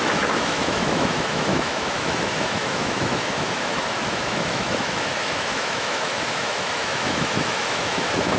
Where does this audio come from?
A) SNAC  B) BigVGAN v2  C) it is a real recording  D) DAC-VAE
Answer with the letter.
D